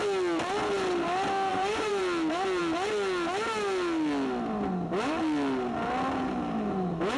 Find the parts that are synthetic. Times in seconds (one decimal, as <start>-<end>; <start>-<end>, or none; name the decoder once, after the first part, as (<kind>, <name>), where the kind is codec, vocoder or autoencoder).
1.5-2.0 (vocoder, Vocos)